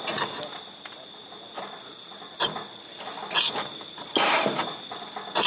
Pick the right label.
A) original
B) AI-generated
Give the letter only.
A